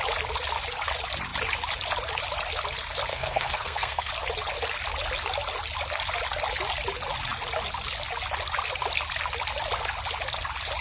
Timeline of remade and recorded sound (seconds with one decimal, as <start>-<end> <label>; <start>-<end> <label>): 0.0-3.1 recorded; 3.1-4.1 remade; 4.1-10.8 recorded